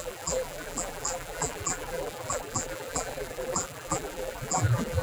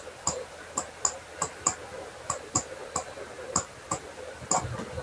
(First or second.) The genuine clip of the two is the second